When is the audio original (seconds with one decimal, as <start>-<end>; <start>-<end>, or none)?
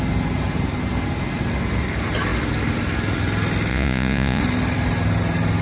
0.0-3.7; 4.4-5.6